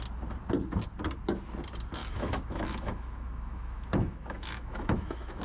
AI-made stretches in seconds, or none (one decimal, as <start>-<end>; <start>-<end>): 2.0-5.4